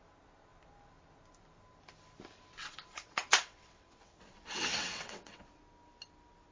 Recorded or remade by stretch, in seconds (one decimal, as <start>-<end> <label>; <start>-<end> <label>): 0.0-2.6 recorded; 2.6-5.6 remade; 5.6-6.5 recorded